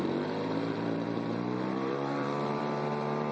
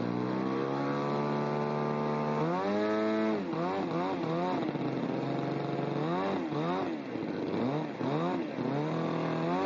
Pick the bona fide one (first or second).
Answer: second